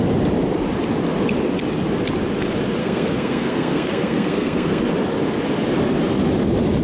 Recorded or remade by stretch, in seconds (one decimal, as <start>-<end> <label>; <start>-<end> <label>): 0.0-2.8 recorded; 2.8-4.8 remade; 4.8-6.8 recorded